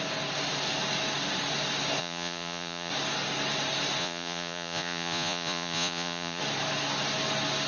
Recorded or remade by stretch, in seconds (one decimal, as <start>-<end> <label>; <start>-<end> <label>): 0.0-2.0 recorded; 2.0-2.9 remade; 2.9-4.0 recorded; 4.0-6.4 remade; 6.4-7.7 recorded